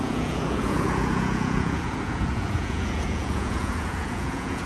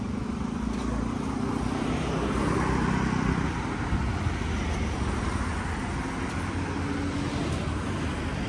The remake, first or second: first